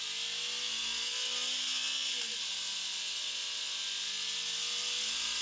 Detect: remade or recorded recorded